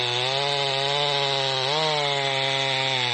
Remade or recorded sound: recorded